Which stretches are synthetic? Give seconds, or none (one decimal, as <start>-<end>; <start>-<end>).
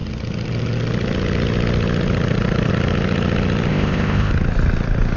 3.7-4.3